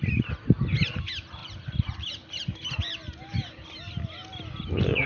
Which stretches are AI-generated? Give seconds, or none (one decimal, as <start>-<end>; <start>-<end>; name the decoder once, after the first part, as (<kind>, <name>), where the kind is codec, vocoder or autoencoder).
none

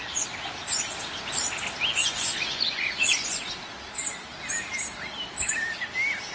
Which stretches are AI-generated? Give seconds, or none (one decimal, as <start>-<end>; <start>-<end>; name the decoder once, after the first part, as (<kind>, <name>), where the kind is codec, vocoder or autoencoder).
1.9-3.4 (vocoder, Vocos)

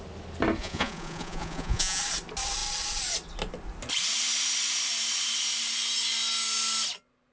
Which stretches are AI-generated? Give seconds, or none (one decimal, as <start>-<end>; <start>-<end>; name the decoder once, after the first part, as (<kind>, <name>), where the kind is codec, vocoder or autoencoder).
0.6-2.0 (vocoder, Vocos)

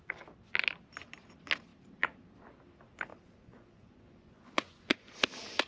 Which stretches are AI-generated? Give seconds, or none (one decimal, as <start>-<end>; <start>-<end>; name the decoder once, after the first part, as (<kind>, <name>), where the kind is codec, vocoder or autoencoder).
3.1-5.2 (vocoder, Vocos)

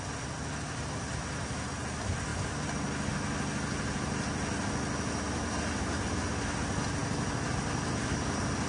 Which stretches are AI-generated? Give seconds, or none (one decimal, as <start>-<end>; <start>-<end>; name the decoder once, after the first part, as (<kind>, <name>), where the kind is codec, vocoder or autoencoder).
none